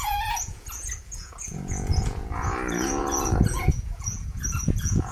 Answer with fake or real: fake